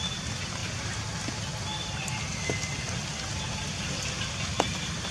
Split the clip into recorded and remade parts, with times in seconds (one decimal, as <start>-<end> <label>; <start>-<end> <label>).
0.0-5.1 recorded